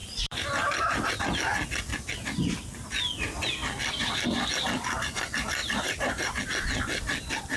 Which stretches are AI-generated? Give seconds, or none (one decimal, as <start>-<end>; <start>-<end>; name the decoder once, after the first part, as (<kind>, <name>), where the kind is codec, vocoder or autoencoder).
0.0-1.2 (vocoder, BigVGAN v2); 5.6-6.4